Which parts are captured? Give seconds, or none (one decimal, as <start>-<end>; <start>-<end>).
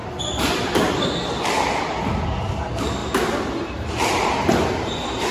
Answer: 0.0-5.3